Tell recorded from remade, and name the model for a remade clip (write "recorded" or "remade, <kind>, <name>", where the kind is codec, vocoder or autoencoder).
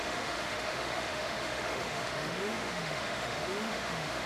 remade, autoencoder, DAC-VAE